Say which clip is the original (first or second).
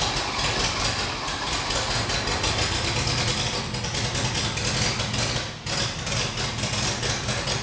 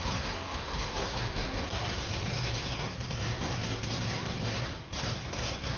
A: first